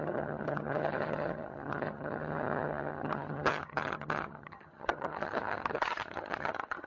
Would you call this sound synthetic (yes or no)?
yes